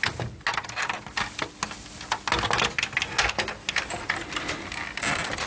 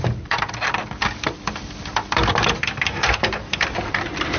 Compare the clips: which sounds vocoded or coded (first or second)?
second